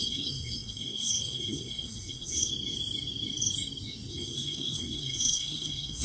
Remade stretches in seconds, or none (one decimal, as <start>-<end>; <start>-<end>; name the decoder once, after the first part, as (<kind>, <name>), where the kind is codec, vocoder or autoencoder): 0.0-2.5 (codec, SNAC); 4.1-6.0